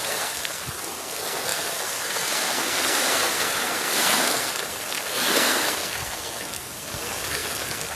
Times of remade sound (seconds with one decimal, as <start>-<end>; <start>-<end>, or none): 0.0-8.0